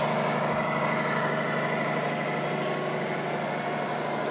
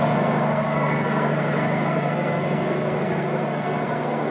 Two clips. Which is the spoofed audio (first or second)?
second